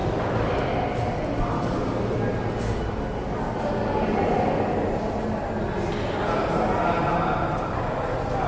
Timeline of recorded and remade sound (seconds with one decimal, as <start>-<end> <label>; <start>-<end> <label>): 0.0-8.5 recorded